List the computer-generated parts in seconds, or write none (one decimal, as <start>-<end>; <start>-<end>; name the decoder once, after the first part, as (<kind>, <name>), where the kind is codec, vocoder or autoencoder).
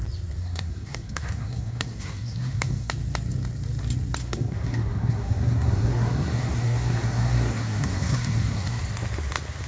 0.4-2.9 (codec, SNAC); 4.2-8.8